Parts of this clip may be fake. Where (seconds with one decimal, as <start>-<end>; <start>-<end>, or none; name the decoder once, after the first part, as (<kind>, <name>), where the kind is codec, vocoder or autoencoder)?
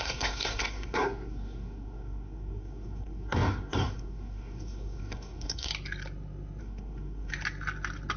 0.0-5.7 (codec, SNAC); 6.6-7.3